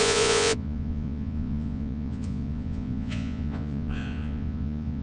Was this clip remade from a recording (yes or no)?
yes